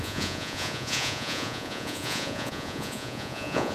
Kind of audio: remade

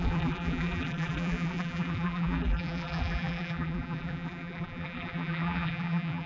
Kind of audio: remade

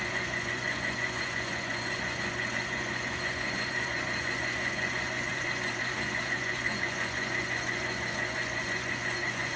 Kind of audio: remade